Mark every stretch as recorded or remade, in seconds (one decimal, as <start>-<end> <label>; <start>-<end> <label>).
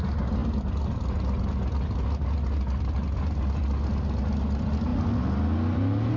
0.0-6.2 recorded